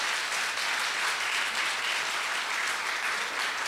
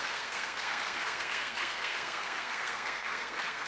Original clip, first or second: first